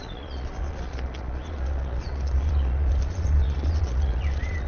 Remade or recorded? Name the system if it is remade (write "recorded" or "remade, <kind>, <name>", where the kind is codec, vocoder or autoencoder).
remade, vocoder, Vocos